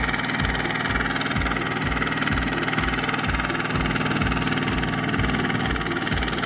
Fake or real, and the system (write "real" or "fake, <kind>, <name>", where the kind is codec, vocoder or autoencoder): real